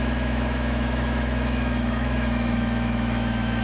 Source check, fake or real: fake